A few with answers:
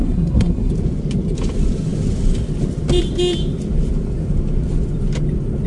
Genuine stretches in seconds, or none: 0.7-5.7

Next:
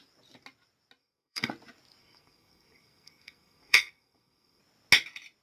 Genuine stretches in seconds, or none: 0.0-1.0; 1.5-2.0; 4.6-5.4

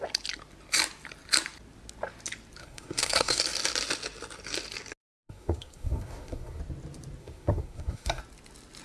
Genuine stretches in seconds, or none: 0.0-2.6; 3.4-5.0; 6.6-7.2; 8.2-8.8

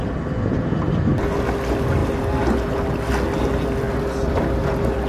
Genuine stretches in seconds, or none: 0.0-5.1